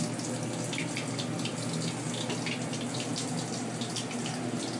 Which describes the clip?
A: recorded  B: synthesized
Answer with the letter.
A